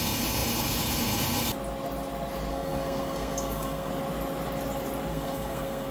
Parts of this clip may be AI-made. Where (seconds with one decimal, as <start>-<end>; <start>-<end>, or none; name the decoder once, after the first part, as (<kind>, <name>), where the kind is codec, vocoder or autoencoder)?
2.5-3.9 (codec, SNAC); 5.1-5.9